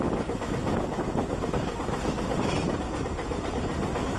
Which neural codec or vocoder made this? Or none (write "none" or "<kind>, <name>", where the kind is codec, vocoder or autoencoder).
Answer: none